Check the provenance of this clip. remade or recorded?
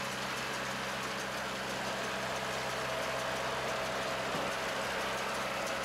recorded